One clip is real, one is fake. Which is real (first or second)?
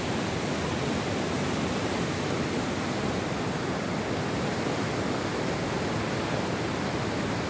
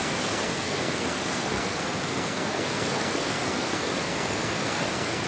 first